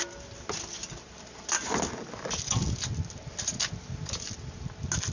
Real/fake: real